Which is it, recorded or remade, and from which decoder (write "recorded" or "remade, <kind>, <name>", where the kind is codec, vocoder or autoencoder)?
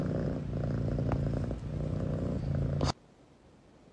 recorded